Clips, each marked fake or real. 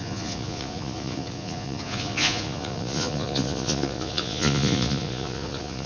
fake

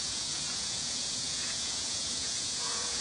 fake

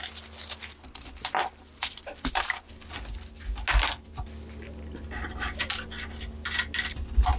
real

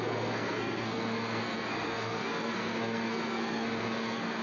fake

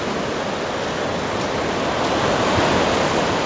real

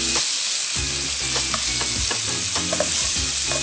real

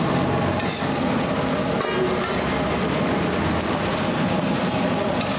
real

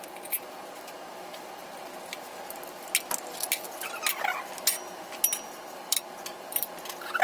real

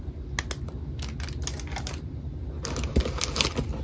real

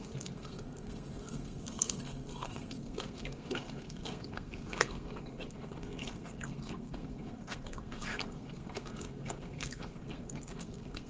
fake